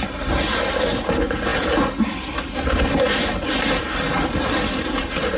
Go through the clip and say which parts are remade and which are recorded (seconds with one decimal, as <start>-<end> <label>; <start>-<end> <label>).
0.0-5.4 recorded